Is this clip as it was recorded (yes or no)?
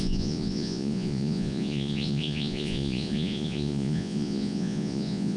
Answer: no